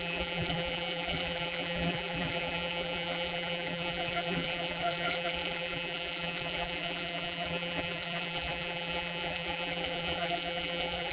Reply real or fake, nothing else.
fake